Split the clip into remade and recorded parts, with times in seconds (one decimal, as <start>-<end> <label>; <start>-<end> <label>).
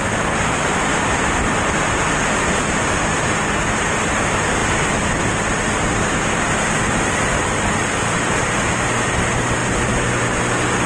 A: 0.0-0.9 recorded; 0.9-3.5 remade; 3.5-4.6 recorded; 4.6-8.4 remade; 8.4-10.9 recorded